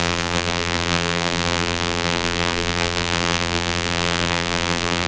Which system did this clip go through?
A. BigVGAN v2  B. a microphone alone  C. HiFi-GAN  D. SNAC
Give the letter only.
A